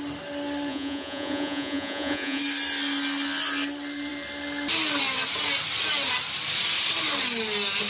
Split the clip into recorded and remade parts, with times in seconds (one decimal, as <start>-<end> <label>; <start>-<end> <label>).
0.0-0.7 recorded; 0.7-2.4 remade; 2.4-7.9 recorded